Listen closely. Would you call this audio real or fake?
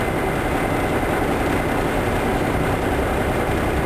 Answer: real